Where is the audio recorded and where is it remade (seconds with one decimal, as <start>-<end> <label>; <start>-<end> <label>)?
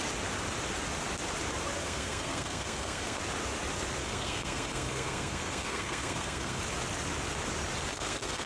0.0-1.8 recorded; 1.8-3.2 remade; 3.2-4.0 recorded; 4.0-6.6 remade; 6.6-7.9 recorded; 7.9-8.5 remade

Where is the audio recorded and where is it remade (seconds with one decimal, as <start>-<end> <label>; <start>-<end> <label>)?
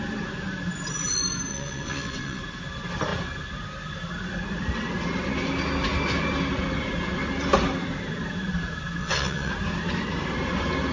0.0-1.5 recorded; 1.5-2.4 remade; 2.4-9.0 recorded; 9.0-9.5 remade; 9.5-10.9 recorded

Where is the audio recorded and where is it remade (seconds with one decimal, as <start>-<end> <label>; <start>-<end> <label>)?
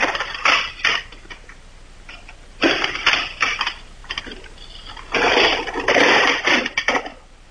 0.0-7.5 recorded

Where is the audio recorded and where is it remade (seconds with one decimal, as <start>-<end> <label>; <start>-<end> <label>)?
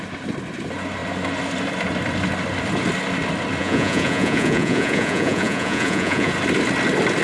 0.0-3.6 recorded; 3.6-6.3 remade; 6.3-7.2 recorded